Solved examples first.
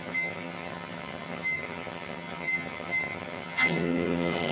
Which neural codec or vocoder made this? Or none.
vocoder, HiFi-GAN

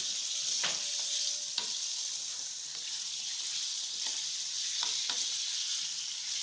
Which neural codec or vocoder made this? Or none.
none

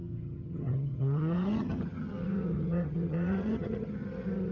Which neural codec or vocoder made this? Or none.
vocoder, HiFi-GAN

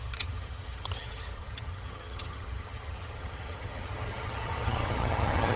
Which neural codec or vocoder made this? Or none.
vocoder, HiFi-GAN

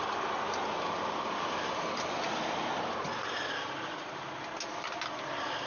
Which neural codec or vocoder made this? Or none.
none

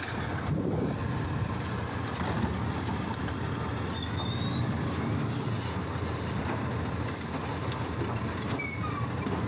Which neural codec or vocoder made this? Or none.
none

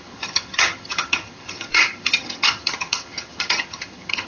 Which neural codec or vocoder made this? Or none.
vocoder, HiFi-GAN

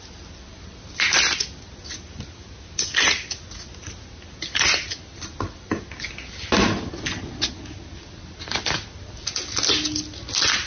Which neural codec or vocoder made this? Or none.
none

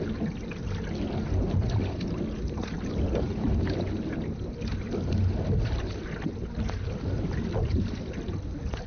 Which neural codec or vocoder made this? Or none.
none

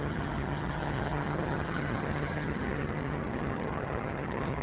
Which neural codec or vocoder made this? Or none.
vocoder, HiFi-GAN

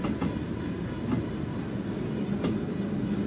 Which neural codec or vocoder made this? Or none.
none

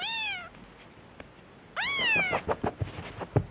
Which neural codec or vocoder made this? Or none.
none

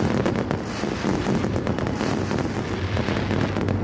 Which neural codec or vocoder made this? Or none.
none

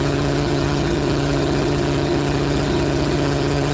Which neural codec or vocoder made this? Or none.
vocoder, HiFi-GAN